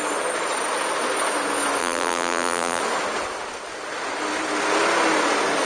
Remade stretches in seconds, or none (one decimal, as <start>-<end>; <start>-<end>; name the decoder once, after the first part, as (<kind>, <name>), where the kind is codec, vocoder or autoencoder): 1.8-2.8 (vocoder, BigVGAN v2)